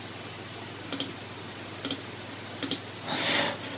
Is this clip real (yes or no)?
yes